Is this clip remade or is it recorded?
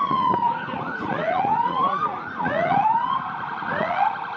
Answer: remade